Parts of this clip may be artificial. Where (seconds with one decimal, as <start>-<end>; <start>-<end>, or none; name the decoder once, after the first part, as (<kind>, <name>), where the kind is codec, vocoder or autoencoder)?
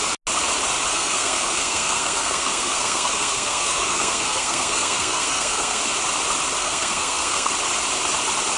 0.9-5.8 (codec, SNAC); 6.6-7.5